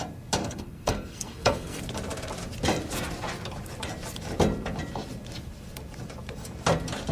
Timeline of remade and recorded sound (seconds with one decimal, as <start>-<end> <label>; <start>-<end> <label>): 0.0-0.4 recorded; 0.4-1.8 remade; 1.8-7.1 recorded